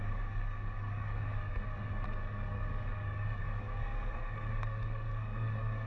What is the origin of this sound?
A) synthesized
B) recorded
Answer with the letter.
A